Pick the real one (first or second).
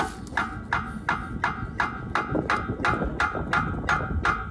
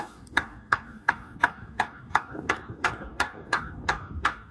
first